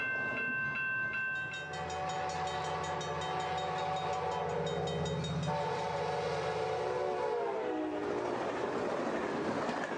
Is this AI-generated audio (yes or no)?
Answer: no